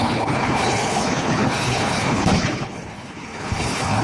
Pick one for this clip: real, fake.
fake